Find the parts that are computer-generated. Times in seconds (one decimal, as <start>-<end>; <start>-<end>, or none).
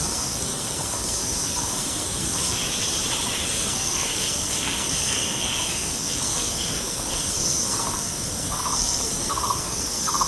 0.0-2.6; 3.4-10.3